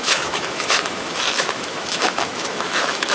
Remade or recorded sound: remade